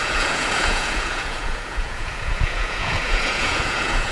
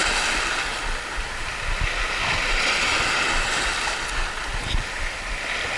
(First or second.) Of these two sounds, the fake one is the first